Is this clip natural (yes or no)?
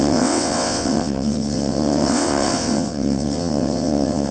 no